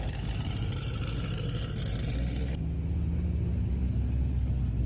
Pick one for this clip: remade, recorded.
recorded